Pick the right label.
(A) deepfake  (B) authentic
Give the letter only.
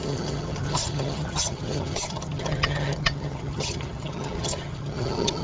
A